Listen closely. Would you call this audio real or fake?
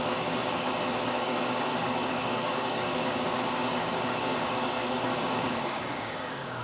fake